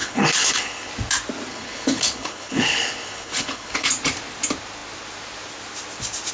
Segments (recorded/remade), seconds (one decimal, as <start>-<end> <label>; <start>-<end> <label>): 0.0-0.9 remade; 0.9-1.5 recorded; 1.5-3.9 remade; 3.9-6.3 recorded